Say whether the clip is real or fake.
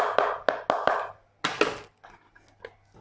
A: real